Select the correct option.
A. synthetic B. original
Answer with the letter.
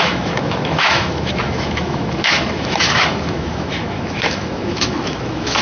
A